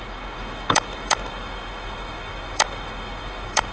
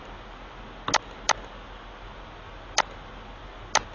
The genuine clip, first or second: second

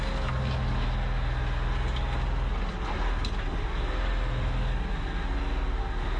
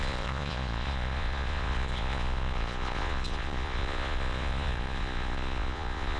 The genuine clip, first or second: first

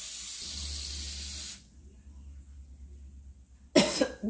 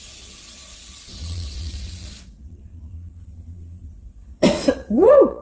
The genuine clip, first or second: first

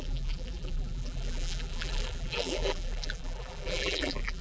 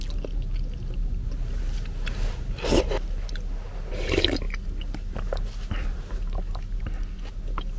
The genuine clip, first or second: second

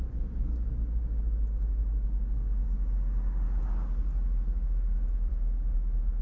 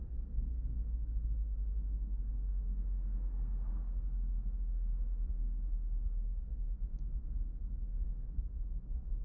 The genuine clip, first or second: first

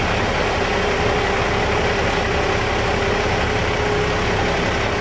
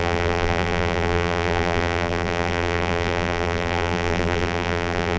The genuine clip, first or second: first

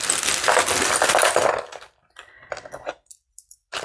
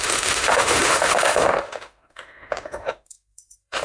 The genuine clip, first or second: first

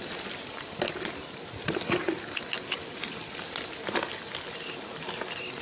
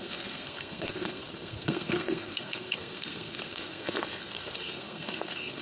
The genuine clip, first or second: first